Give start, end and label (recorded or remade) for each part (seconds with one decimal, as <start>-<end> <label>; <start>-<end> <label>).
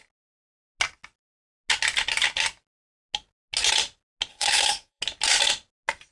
0.0-4.3 recorded; 4.3-5.0 remade; 5.0-6.1 recorded